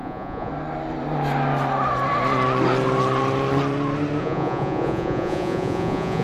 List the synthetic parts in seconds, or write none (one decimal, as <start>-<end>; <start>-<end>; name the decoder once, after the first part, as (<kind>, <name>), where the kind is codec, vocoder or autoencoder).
0.0-0.5 (vocoder, Vocos); 4.2-6.2